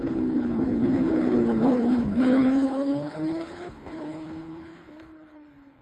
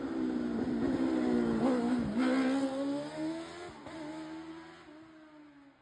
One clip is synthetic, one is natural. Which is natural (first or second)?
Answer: second